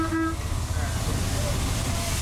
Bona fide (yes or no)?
yes